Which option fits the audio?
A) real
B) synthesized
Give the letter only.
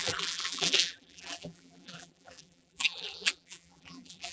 B